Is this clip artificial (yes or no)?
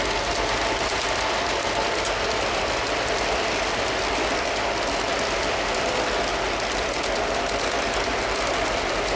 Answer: no